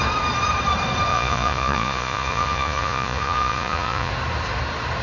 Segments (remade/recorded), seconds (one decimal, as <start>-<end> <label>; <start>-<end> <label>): 0.0-1.1 recorded; 1.1-4.1 remade; 4.1-5.0 recorded